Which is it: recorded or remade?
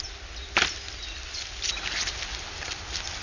recorded